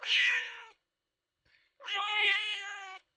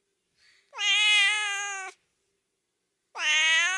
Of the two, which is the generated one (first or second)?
first